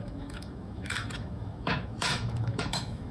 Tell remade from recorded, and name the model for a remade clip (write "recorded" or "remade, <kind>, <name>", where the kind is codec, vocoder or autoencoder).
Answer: remade, autoencoder, DAC-VAE